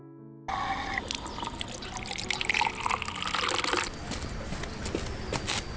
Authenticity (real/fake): real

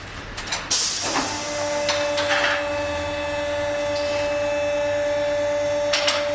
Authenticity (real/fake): real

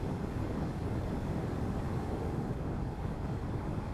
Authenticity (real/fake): fake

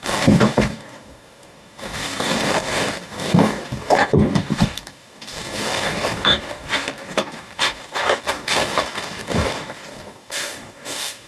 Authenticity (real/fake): fake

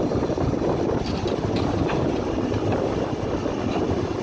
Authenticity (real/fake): real